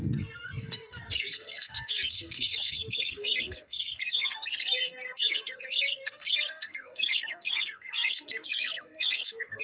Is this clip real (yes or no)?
no